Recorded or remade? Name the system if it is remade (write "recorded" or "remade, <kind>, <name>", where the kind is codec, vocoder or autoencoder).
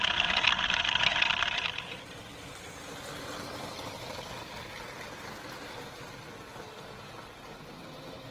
recorded